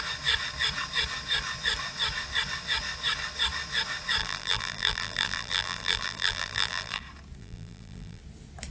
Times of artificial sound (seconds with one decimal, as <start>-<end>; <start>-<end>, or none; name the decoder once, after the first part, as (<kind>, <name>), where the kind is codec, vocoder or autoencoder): 4.2-7.0 (vocoder, BigVGAN v2); 7.4-8.2